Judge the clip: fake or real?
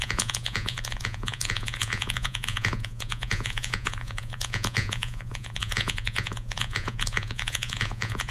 fake